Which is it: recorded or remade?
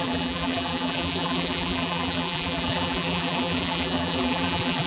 remade